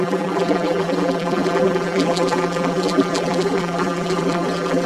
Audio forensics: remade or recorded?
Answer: remade